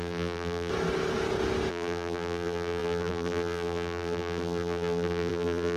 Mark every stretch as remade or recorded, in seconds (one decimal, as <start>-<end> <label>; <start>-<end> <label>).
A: 0.0-0.7 remade; 0.7-1.7 recorded; 1.7-5.8 remade